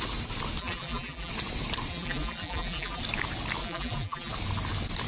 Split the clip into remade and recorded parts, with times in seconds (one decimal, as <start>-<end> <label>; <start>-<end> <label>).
0.0-0.6 recorded; 0.6-1.3 remade; 1.3-1.9 recorded; 1.9-3.0 remade; 3.0-3.6 recorded; 3.6-4.3 remade; 4.3-5.1 recorded